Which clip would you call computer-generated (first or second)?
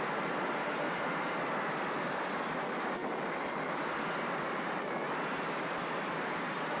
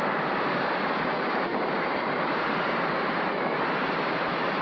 second